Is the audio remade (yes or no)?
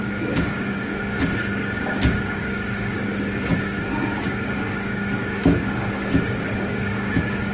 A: yes